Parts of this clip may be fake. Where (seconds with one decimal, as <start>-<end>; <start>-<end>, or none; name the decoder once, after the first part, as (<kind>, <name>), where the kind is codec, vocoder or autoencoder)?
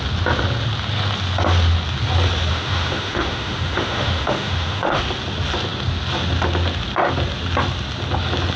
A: 2.5-5.0 (autoencoder, DAC-VAE)